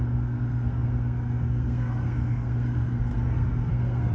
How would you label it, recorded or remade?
remade